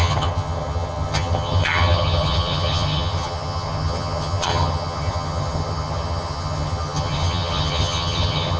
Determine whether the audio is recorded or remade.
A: remade